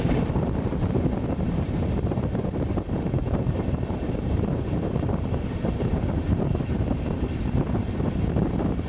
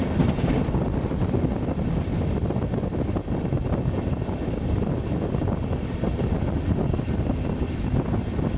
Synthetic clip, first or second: first